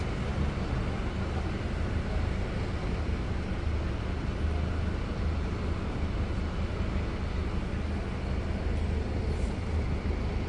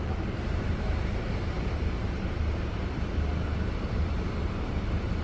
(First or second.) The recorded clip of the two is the first